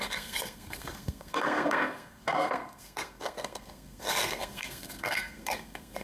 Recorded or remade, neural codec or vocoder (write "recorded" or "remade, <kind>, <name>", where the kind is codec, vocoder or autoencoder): remade, codec, SNAC